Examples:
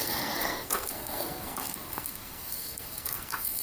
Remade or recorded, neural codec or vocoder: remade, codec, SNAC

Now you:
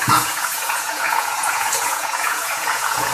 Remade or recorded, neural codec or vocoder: remade, vocoder, Vocos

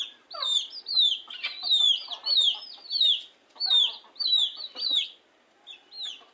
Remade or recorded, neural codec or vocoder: recorded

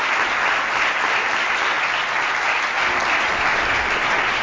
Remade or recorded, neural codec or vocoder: recorded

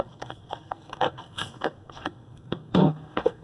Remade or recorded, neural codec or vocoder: remade, codec, SNAC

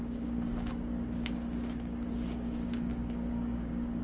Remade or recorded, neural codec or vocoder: remade, codec, DAC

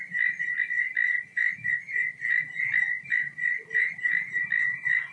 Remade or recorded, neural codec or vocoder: recorded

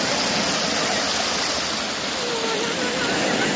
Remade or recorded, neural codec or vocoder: recorded